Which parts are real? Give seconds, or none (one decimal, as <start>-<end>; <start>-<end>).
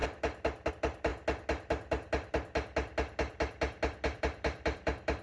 0.0-0.7; 1.1-4.2